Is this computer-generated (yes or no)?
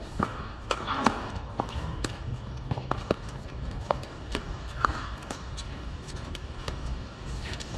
yes